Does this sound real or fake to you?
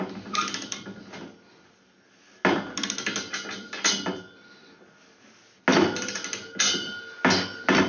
real